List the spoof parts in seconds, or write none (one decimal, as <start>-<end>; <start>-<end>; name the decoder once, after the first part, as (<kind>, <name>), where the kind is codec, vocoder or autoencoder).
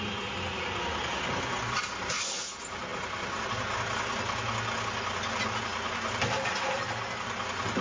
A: none